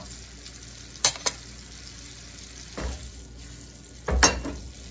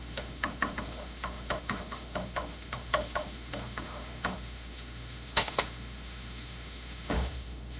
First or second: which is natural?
first